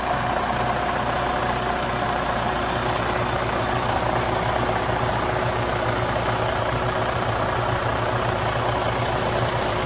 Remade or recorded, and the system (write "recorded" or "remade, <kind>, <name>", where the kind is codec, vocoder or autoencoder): remade, vocoder, BigVGAN v2